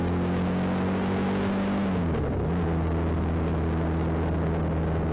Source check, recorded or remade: recorded